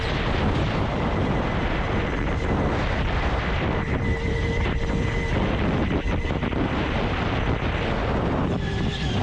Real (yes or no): yes